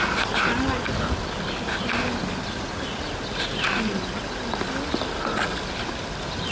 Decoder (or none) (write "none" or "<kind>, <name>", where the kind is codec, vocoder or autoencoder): none